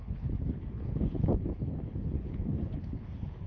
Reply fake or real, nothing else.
fake